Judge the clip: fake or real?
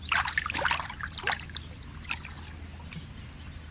real